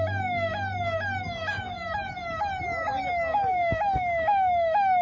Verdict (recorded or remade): remade